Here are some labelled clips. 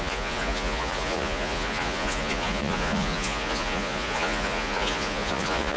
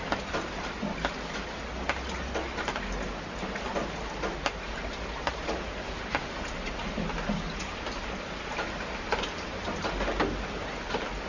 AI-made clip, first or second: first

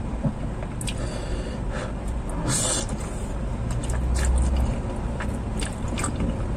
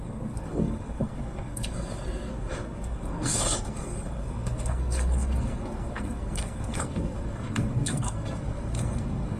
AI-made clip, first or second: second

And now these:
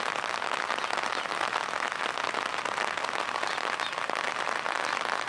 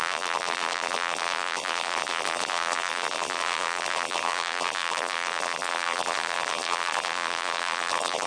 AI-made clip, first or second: second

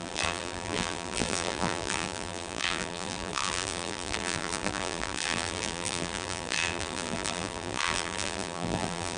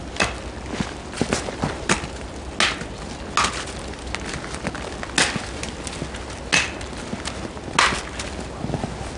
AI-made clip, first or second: first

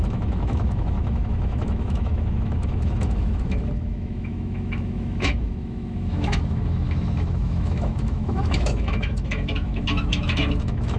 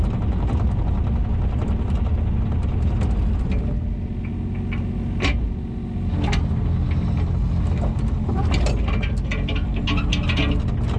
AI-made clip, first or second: first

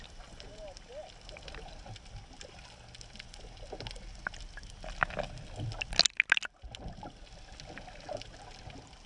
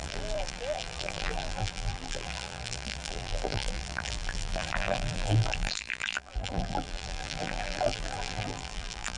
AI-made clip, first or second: second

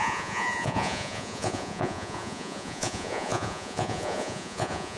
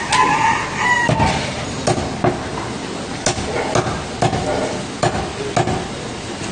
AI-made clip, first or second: first